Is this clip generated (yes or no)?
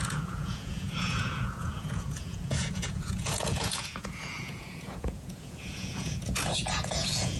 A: yes